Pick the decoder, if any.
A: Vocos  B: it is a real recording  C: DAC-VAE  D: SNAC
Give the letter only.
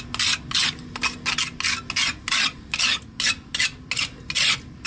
B